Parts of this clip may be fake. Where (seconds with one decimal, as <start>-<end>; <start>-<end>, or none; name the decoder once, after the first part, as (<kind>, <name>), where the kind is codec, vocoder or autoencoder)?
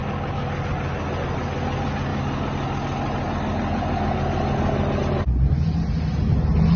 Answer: none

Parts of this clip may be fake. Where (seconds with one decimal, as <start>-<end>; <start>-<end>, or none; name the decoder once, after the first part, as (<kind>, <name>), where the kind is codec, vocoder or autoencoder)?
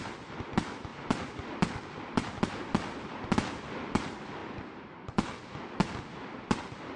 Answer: none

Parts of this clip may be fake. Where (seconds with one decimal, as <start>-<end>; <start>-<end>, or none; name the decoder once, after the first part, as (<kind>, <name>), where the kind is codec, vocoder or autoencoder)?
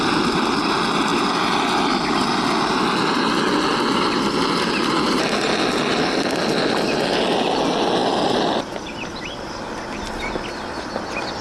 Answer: none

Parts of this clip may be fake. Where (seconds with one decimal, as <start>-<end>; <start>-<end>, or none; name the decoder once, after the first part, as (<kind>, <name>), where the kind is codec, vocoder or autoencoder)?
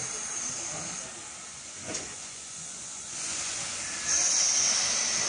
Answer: 1.5-3.8 (vocoder, Vocos)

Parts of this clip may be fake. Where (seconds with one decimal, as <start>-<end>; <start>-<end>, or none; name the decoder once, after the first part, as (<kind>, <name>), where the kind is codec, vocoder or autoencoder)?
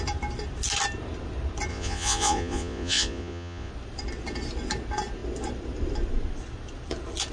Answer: 1.7-3.7 (vocoder, Vocos)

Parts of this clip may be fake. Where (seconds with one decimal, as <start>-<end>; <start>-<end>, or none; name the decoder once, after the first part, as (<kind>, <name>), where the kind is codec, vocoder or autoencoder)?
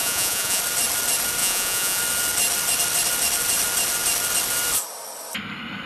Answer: 0.0-0.6 (vocoder, Vocos); 1.4-2.0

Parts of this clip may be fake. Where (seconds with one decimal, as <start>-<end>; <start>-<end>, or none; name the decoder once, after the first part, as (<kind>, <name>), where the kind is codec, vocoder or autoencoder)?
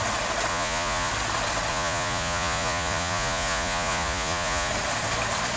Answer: 0.5-1.1 (vocoder, Vocos); 1.7-4.7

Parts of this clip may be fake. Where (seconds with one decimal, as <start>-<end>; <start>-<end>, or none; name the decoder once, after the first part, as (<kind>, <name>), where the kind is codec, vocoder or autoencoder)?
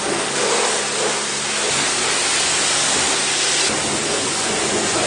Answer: 4.2-5.1 (vocoder, Vocos)